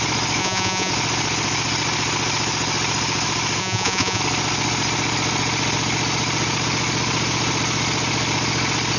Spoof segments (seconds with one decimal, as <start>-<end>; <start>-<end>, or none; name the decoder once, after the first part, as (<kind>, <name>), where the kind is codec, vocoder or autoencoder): 0.4-0.9 (vocoder, Vocos); 3.6-4.2